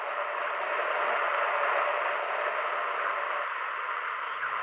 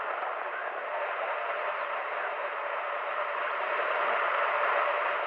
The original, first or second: first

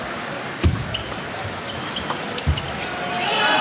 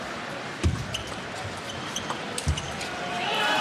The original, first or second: first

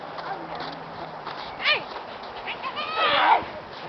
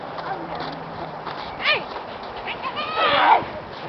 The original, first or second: first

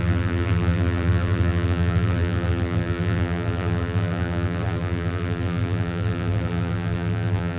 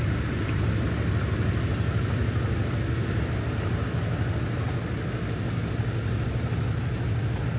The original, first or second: second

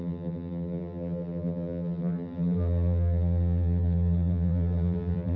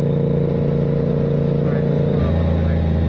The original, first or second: second